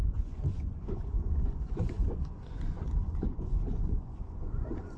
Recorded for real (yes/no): no